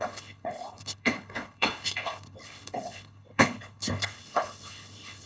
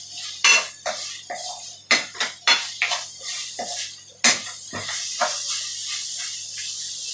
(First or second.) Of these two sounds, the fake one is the first